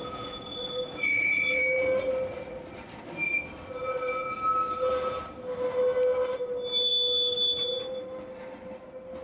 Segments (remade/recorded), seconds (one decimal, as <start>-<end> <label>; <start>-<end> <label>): 0.0-1.6 remade; 1.6-9.2 recorded